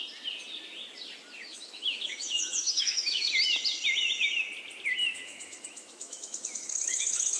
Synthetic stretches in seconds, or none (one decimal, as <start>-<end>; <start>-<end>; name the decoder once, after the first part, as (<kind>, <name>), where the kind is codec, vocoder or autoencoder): 1.5-3.3 (autoencoder, DAC-VAE); 5.0-7.4